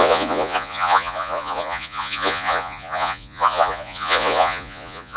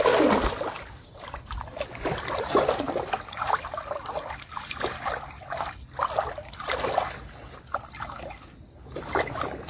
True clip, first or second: second